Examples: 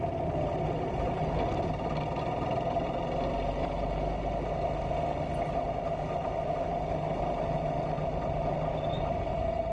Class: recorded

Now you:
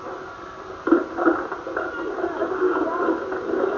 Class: recorded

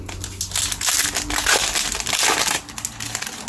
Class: recorded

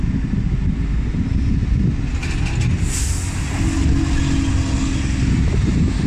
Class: recorded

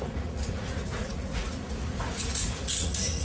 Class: remade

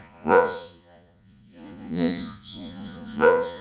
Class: remade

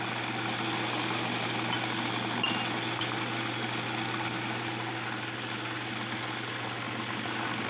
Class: recorded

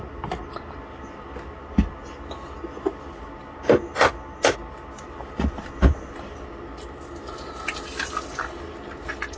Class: recorded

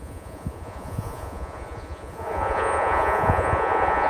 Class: remade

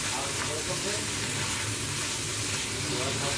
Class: recorded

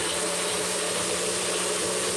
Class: recorded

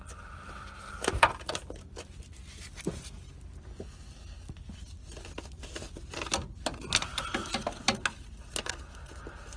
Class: recorded